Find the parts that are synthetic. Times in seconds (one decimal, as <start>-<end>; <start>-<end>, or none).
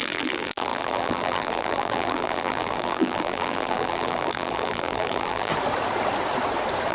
0.0-5.5